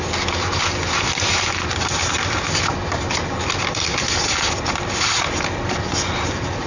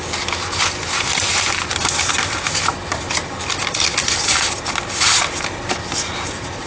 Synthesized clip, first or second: second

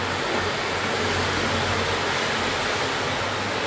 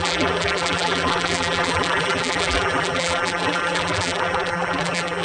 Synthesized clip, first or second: second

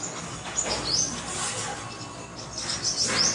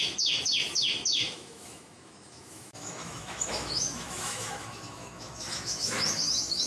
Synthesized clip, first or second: second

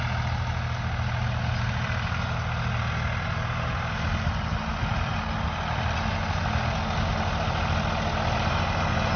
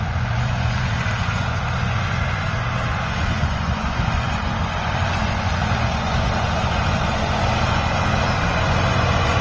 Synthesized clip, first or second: second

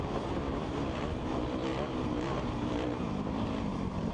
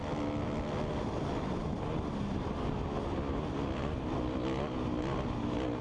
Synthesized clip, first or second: first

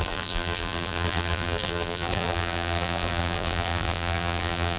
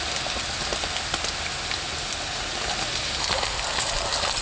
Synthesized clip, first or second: first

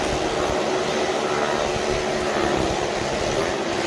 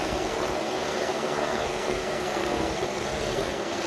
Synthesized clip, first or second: second